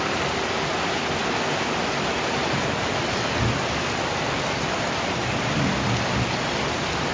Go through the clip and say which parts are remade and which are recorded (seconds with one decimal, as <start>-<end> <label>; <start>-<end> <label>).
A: 0.0-7.1 recorded